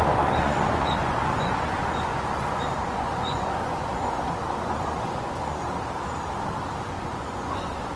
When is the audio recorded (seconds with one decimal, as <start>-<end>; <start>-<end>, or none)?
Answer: 5.6-6.8